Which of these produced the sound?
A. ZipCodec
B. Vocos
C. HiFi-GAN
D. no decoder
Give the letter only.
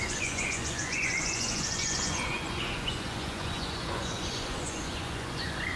B